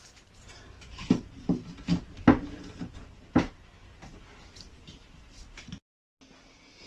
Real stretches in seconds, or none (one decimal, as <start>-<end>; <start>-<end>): 0.0-6.9